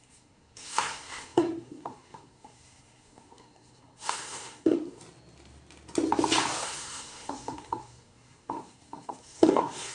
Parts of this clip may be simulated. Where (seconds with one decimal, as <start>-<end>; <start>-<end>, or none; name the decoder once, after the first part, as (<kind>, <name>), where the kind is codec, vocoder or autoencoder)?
0.0-5.0 (codec, SNAC); 6.6-9.9